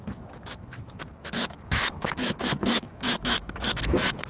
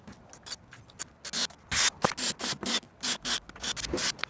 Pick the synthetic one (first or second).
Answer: first